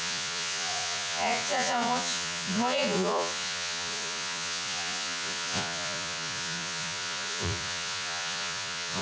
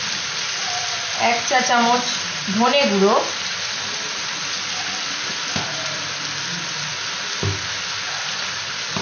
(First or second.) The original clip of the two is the second